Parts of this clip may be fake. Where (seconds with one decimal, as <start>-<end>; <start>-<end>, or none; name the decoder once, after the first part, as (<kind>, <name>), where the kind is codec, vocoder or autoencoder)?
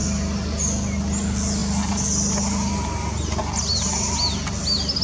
none